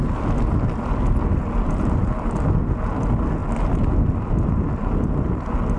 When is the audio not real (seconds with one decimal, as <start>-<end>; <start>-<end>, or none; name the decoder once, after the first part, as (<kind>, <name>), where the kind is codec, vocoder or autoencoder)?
none